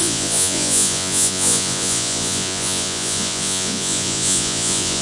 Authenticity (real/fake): fake